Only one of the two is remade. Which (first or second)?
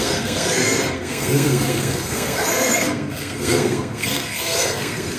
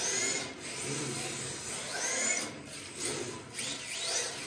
first